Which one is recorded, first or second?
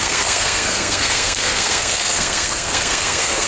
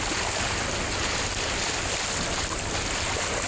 second